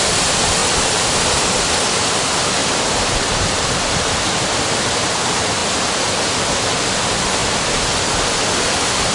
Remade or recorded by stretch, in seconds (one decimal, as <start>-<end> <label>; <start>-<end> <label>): 0.0-0.6 recorded; 0.6-1.2 remade; 1.2-2.6 recorded; 2.6-4.8 remade; 4.8-9.1 recorded